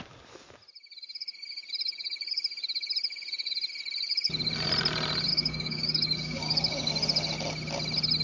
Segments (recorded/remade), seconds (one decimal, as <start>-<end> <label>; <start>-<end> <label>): 0.0-5.3 recorded; 5.3-6.9 remade; 6.9-8.2 recorded